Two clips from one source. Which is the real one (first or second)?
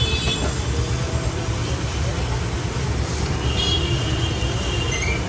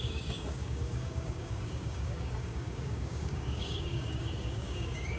first